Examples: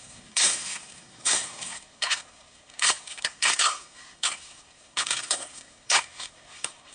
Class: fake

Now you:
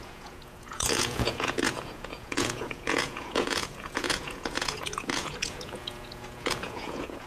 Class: fake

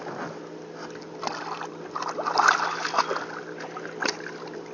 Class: real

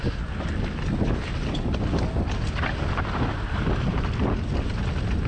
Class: real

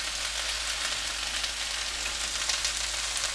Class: real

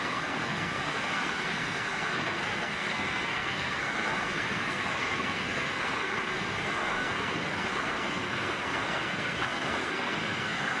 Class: fake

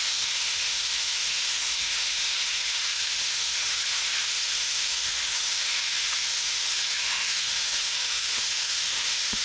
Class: fake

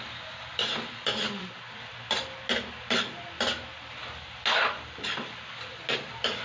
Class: real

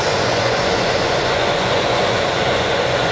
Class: fake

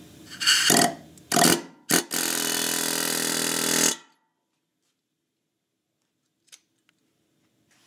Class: real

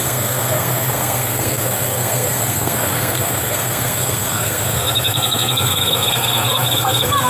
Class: fake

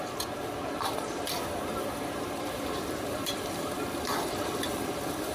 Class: fake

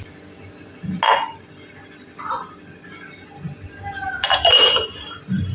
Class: real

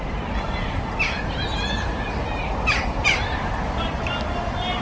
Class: real